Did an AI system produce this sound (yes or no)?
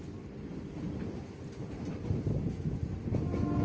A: no